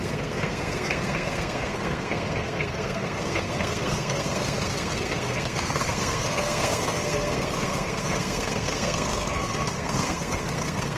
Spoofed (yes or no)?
yes